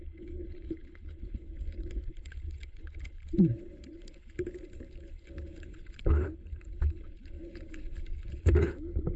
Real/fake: fake